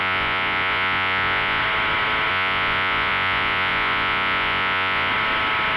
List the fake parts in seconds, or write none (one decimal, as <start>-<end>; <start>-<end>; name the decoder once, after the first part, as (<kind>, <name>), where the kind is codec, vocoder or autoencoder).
0.0-1.6 (vocoder, Vocos); 2.3-5.1